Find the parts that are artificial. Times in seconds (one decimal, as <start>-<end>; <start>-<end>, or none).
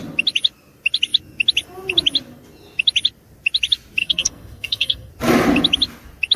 4.0-5.1